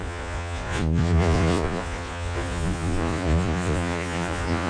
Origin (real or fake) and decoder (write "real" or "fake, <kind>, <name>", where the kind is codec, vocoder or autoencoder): fake, vocoder, Vocos